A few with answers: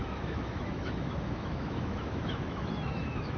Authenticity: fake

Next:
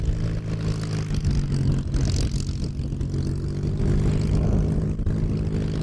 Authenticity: real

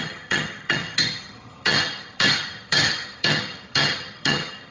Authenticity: fake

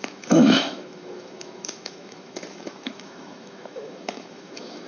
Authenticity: fake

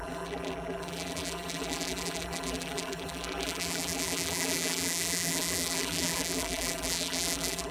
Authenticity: fake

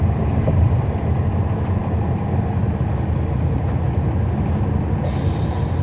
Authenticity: real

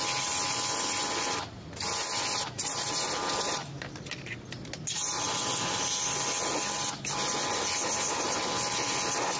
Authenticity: real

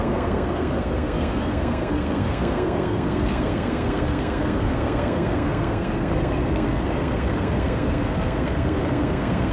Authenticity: fake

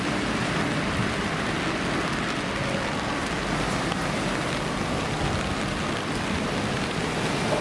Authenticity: real